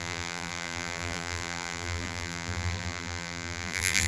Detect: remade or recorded remade